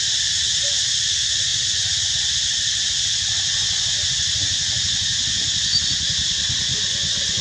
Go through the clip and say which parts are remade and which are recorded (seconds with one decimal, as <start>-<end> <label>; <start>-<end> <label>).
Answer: 0.0-1.5 recorded; 1.5-2.2 remade; 2.2-3.5 recorded; 3.5-5.8 remade; 5.8-6.7 recorded; 6.7-7.4 remade